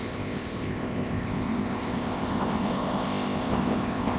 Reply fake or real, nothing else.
fake